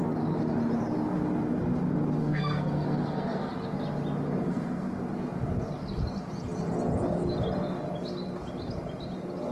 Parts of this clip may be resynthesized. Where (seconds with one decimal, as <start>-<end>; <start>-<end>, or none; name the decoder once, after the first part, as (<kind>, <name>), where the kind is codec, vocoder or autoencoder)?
2.2-3.5 (codec, SNAC); 4.4-5.0